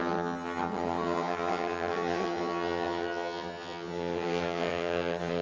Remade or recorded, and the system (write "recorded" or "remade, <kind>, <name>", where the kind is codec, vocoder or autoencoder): remade, vocoder, HiFi-GAN